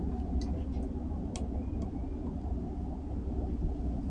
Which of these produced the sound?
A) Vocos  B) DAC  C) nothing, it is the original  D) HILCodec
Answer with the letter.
C